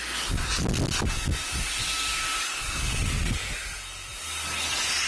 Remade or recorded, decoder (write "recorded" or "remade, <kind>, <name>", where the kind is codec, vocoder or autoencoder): recorded